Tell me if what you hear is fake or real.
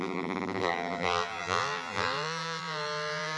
fake